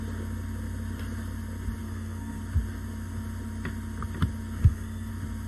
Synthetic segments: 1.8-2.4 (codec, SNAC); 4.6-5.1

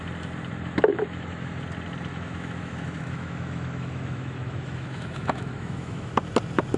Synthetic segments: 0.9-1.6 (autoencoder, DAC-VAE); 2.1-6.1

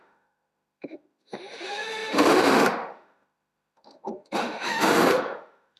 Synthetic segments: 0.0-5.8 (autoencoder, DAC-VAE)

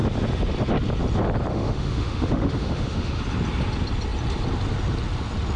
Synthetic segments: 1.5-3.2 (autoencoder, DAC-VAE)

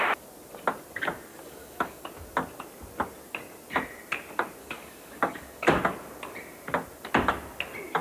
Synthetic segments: 1.3-2.0 (codec, DAC); 4.6-5.8

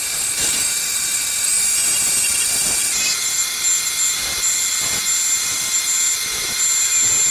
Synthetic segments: 0.0-1.5 (vocoder, BigVGAN v2)